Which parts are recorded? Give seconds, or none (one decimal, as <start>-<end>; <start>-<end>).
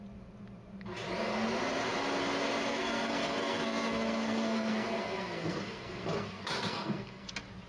0.0-2.7; 7.3-7.7